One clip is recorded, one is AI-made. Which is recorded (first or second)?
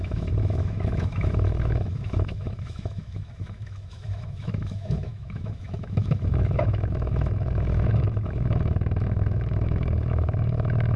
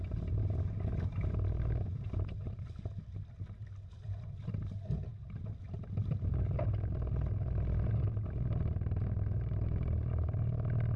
second